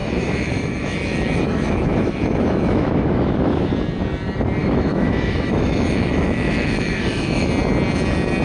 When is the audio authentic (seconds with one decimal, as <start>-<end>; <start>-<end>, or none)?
3.7-4.6; 7.5-8.4